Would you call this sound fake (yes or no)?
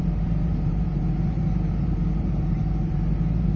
yes